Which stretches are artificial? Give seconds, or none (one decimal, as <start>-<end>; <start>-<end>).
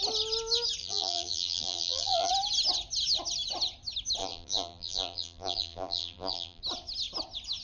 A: 0.8-2.3; 4.2-6.6